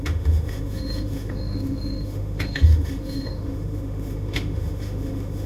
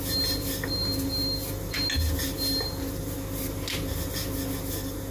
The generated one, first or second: first